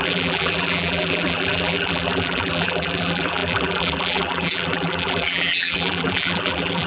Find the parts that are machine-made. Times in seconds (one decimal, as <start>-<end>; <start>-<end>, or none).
0.0-6.9